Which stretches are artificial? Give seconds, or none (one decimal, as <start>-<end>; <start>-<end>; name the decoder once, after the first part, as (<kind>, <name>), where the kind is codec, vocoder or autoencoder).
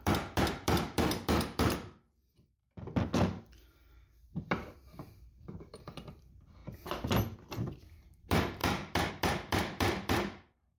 0.0-2.6 (vocoder, BigVGAN v2); 4.3-6.6; 7.5-10.8